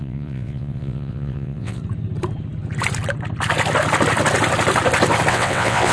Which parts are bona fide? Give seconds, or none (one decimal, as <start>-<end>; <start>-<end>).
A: 1.8-5.3